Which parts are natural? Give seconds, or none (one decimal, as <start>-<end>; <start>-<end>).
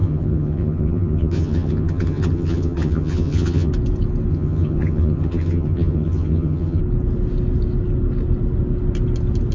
3.7-4.3; 6.8-9.5